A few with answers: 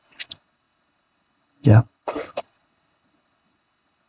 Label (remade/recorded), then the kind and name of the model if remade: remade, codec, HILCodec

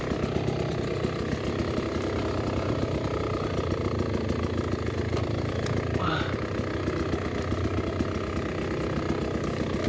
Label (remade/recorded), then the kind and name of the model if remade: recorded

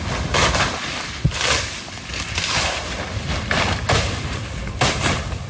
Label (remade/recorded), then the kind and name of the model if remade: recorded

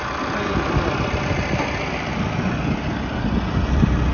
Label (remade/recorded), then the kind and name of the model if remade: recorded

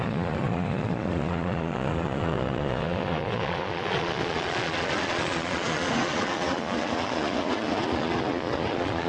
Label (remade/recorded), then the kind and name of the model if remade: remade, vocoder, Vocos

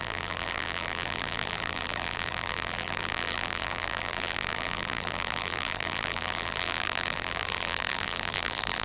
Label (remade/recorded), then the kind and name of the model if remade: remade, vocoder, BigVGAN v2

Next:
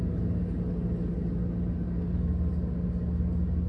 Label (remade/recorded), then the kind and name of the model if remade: recorded